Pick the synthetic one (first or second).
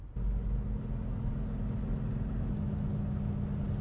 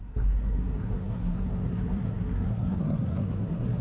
second